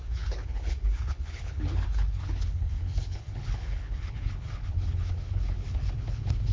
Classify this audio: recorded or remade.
remade